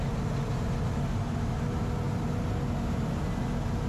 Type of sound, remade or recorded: recorded